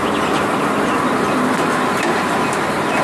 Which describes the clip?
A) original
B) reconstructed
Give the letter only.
A